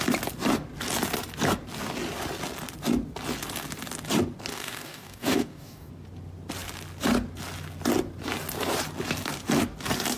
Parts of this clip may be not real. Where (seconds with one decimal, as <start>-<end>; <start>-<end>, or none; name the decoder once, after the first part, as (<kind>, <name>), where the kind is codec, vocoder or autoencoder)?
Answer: 4.5-5.9 (codec, DAC)